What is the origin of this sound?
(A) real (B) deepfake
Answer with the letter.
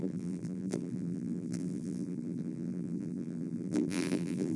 B